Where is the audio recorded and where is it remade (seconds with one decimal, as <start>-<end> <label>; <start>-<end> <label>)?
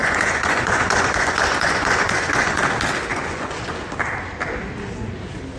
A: 0.0-2.7 remade; 2.7-3.1 recorded; 3.1-3.7 remade; 3.7-5.6 recorded